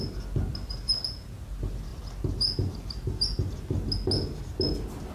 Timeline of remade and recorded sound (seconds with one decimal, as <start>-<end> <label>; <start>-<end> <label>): 0.0-5.1 recorded